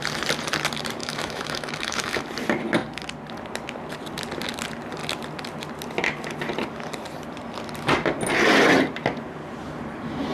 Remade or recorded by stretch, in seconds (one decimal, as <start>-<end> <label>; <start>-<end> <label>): 0.0-1.0 recorded; 1.0-2.2 remade; 2.2-10.3 recorded